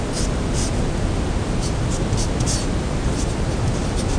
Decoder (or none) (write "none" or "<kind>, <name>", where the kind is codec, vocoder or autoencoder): none